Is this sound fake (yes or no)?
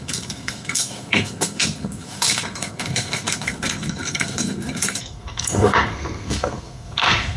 yes